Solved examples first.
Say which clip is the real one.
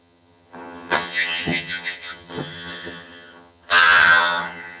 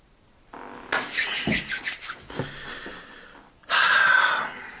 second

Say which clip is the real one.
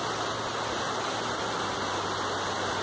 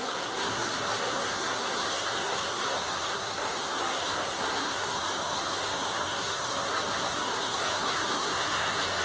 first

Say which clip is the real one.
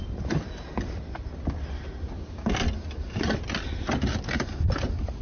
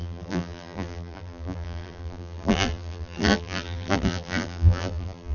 first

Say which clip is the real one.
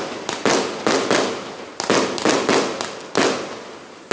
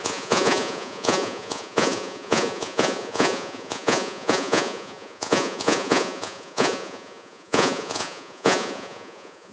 first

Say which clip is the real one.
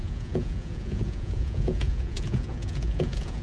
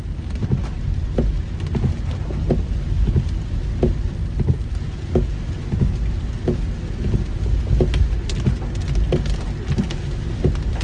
second